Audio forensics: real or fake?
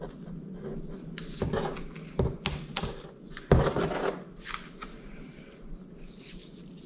real